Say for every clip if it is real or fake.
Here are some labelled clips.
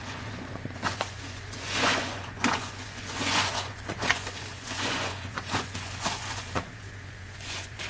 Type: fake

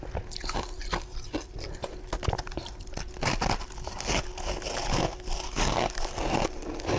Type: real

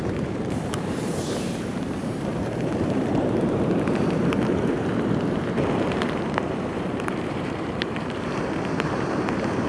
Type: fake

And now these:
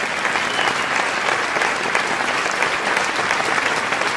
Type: real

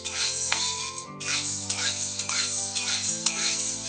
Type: fake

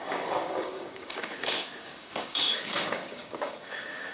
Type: fake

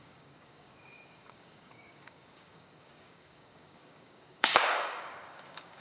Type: fake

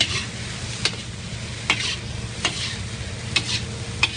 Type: real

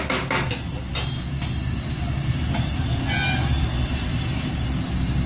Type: real